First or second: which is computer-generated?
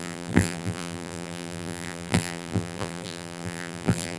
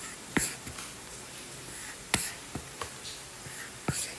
first